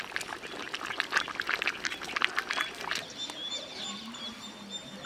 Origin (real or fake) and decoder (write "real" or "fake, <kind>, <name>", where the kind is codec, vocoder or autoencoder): real